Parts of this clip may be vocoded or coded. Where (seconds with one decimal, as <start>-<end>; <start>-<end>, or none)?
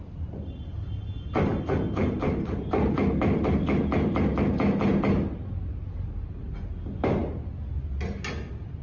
none